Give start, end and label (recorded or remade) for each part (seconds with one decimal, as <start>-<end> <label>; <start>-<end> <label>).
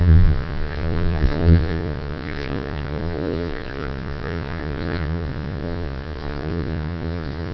0.0-7.5 remade